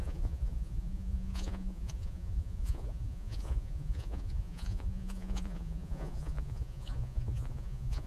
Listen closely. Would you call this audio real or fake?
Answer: fake